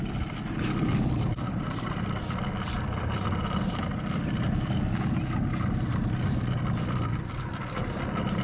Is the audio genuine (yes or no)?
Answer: yes